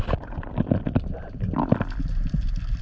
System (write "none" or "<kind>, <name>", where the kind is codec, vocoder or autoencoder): none